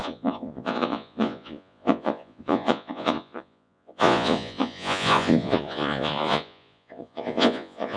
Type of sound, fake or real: fake